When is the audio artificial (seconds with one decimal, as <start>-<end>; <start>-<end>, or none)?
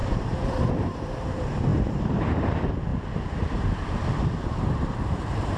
0.0-2.9; 4.2-5.6